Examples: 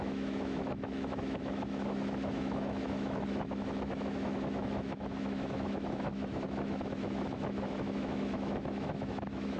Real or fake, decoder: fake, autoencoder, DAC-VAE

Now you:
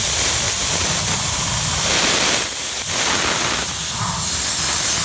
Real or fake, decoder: real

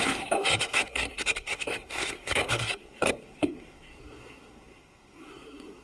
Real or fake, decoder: fake, codec, SNAC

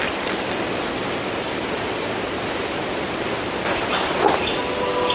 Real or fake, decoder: real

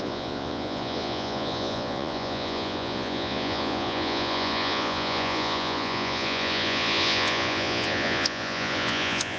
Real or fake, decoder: fake, vocoder, Vocos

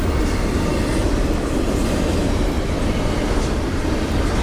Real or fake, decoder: fake, vocoder, BigVGAN v2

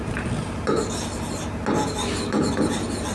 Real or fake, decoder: real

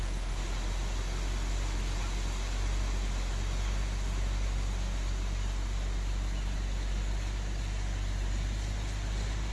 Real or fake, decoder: real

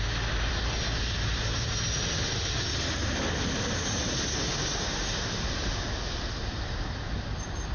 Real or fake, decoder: real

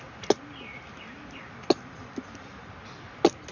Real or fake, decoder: real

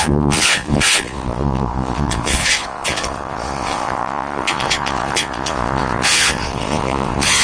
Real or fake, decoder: fake, vocoder, Vocos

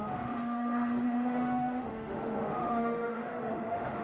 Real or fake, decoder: fake, autoencoder, DAC-VAE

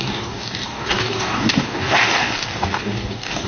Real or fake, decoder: fake, codec, DAC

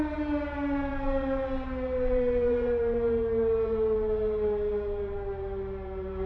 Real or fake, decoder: fake, vocoder, BigVGAN v2